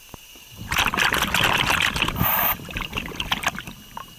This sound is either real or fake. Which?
real